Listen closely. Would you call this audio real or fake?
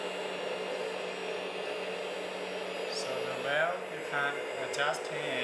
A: real